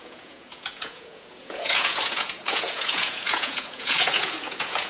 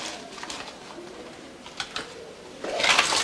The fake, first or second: first